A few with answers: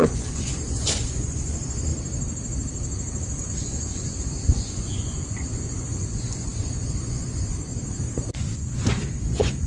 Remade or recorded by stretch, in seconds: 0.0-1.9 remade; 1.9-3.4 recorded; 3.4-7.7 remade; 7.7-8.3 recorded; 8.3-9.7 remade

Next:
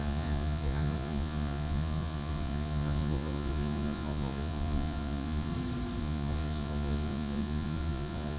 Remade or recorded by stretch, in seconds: 0.0-5.5 remade; 5.5-6.0 recorded; 6.0-8.4 remade

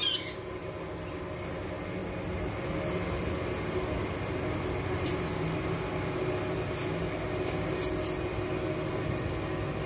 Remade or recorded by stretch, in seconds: 0.0-9.9 recorded

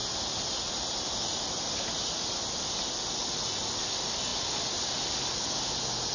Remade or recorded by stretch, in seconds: 0.0-6.1 recorded

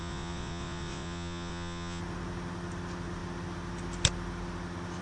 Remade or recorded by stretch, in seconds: 0.0-2.0 remade; 2.0-5.0 recorded

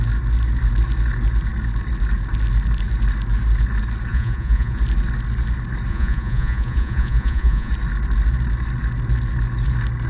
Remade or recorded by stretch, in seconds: 0.0-4.1 recorded; 4.1-4.8 remade; 4.8-5.9 recorded; 5.9-7.7 remade; 7.7-10.1 recorded